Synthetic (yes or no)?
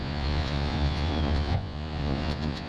yes